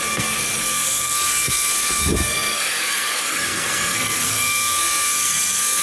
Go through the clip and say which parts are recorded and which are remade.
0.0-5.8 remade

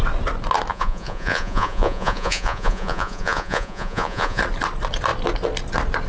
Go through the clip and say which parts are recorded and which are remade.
0.0-0.7 recorded; 0.7-4.4 remade; 4.4-6.1 recorded

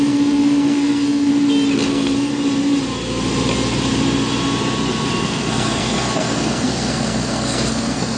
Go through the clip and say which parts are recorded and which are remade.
0.0-1.3 remade; 1.3-1.9 recorded; 1.9-2.3 remade; 2.3-5.2 recorded; 5.2-8.2 remade

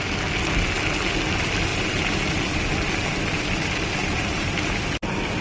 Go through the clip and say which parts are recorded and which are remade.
0.0-1.7 recorded; 1.7-2.7 remade; 2.7-4.0 recorded; 4.0-4.5 remade; 4.5-5.4 recorded